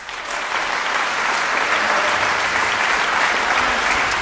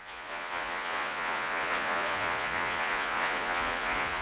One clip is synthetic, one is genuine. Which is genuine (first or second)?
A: first